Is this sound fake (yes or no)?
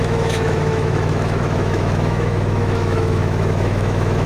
yes